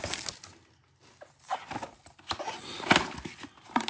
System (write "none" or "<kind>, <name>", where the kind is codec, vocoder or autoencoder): none